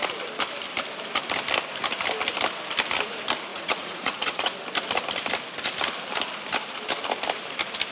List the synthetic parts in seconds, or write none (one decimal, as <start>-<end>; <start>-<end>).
3.5-4.5